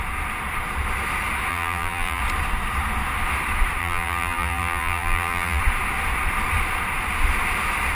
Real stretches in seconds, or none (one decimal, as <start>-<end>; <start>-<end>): 0.0-1.5; 2.2-3.8; 5.6-7.9